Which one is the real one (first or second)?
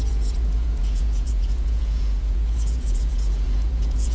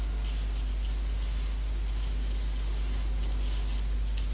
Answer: second